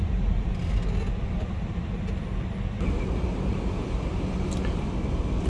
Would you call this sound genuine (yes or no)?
yes